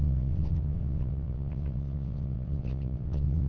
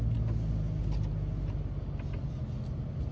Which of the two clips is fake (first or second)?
first